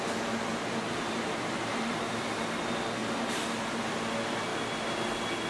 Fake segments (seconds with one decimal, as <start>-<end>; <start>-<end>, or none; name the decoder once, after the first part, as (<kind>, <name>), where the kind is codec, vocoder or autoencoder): 0.5-2.0 (vocoder, BigVGAN v2); 3.0-3.5